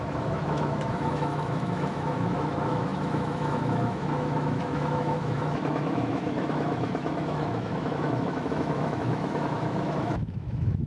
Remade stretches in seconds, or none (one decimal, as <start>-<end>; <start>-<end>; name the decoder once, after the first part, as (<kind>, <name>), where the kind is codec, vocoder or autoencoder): 0.0-10.9 (autoencoder, DAC-VAE)